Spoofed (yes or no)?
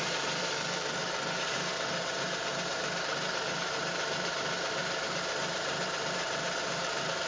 yes